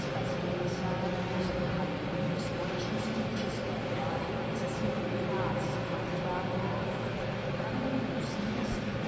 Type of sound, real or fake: real